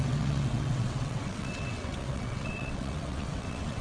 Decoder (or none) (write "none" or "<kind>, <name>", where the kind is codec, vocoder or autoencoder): vocoder, WaveNeXt